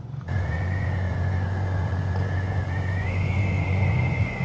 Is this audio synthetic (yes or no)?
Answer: yes